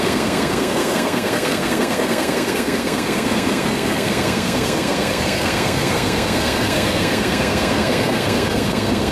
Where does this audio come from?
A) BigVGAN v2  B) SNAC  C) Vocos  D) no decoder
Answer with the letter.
B